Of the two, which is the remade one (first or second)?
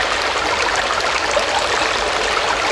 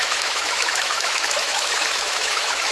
second